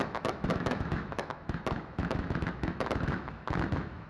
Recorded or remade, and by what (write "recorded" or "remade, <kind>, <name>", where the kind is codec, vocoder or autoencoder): remade, autoencoder, DAC-VAE